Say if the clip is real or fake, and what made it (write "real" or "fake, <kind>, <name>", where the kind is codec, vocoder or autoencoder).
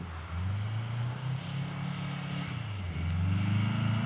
real